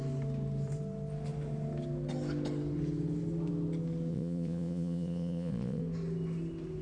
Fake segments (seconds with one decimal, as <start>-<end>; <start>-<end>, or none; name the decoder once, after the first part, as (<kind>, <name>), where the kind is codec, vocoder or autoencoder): 4.1-5.8 (vocoder, Vocos)